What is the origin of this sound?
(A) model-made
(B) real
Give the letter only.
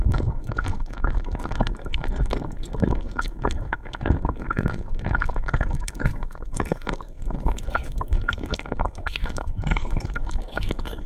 A